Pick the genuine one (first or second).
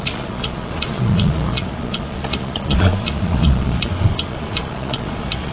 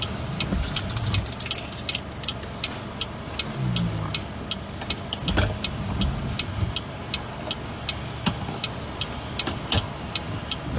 second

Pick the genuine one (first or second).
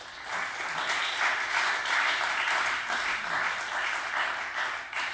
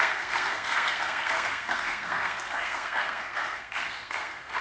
first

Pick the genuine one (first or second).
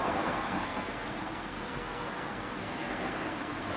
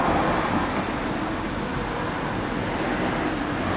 second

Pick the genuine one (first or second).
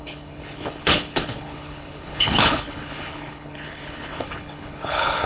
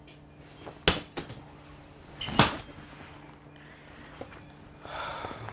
second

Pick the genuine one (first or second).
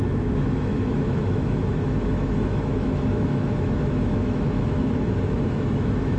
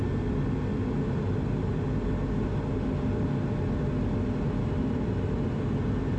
second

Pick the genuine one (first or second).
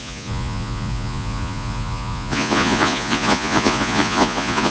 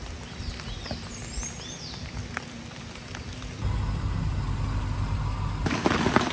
second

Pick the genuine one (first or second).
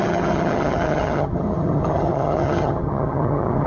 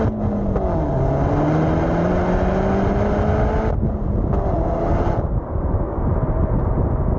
second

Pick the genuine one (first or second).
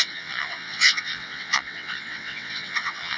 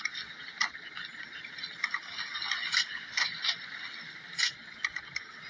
second